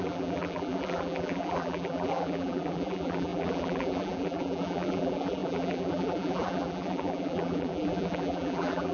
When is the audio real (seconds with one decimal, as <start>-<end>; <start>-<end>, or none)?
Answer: none